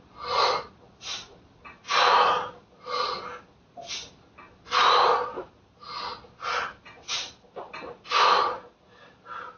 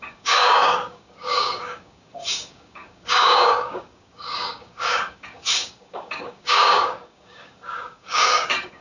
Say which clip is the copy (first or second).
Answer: second